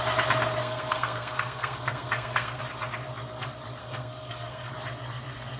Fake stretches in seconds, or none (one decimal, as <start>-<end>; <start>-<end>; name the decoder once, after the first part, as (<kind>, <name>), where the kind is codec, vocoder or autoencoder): 0.6-2.6 (codec, SNAC); 3.8-4.7